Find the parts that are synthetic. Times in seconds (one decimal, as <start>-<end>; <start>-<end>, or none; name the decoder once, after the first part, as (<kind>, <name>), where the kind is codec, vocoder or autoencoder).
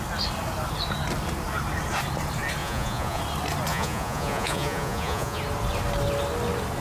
2.6-3.2 (vocoder, Vocos); 3.7-5.4